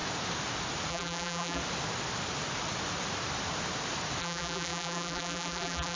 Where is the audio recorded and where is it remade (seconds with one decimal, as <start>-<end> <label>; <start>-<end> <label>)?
0.0-0.9 recorded; 0.9-1.6 remade; 1.6-4.2 recorded; 4.2-6.0 remade